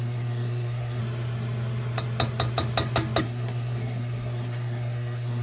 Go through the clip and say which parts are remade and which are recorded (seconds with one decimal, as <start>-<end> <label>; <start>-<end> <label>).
0.0-1.0 remade; 1.0-3.2 recorded; 3.2-5.4 remade